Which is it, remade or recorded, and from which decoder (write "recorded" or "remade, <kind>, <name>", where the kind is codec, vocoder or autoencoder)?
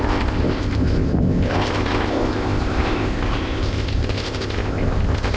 remade, codec, ZipCodec